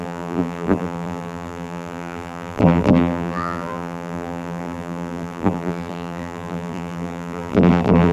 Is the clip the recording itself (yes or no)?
no